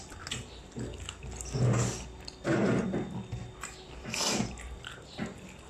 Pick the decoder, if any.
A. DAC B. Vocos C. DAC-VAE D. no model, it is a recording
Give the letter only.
D